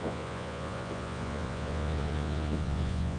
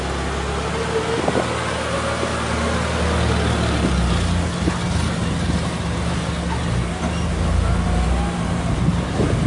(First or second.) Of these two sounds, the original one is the second